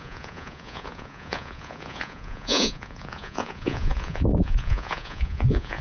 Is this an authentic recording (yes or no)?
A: no